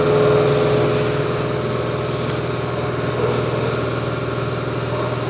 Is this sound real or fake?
real